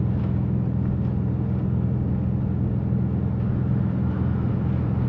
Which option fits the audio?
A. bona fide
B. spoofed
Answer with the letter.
A